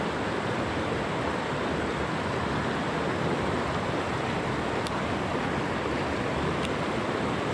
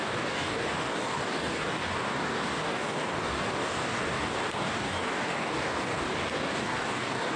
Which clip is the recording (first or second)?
first